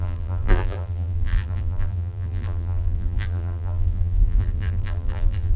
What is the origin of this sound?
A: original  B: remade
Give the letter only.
B